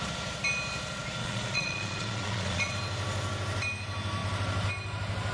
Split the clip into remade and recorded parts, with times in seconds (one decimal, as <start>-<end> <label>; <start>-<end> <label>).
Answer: 0.0-1.2 recorded; 1.2-2.7 remade; 2.7-5.3 recorded